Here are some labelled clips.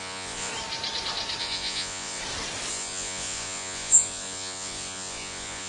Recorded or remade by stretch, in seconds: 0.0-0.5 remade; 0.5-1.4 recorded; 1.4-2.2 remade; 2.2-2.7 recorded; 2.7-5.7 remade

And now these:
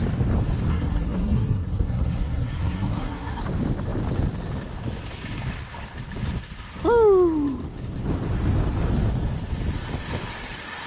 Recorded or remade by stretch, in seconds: 0.0-0.7 recorded; 0.7-3.4 remade; 3.4-10.9 recorded

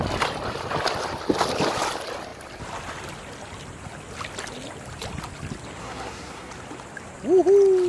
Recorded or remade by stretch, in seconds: 0.0-5.8 recorded; 5.8-6.5 remade; 6.5-7.9 recorded